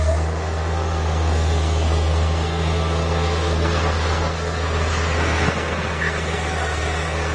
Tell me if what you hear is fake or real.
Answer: fake